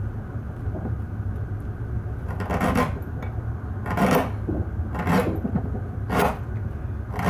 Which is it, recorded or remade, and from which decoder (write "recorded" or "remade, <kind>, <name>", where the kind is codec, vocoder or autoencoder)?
recorded